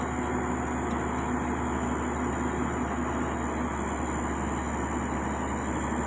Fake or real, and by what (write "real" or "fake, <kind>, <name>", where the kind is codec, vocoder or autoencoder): real